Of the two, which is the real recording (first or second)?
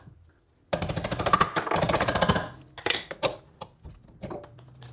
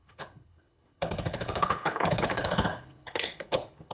first